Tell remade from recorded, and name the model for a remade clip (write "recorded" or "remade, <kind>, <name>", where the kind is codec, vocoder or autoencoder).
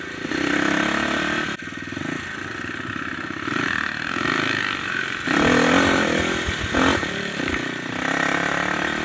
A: recorded